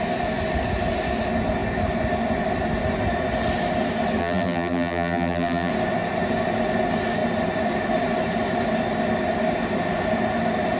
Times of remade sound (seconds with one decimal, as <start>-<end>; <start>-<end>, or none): 4.2-5.7